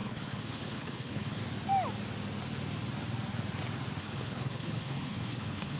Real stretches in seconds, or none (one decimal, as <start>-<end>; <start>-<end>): 1.4-4.0